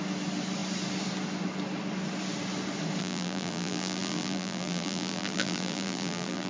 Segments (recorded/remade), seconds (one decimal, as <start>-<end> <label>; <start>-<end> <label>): 0.0-3.0 recorded; 3.0-6.5 remade